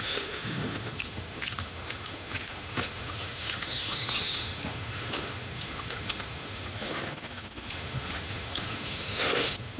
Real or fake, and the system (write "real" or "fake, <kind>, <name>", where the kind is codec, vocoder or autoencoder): fake, autoencoder, DAC-VAE